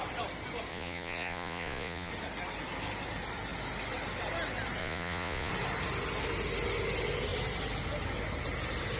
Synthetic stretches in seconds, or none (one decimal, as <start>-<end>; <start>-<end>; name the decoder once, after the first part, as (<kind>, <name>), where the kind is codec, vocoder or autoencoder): 0.7-2.1 (vocoder, Vocos); 4.8-5.5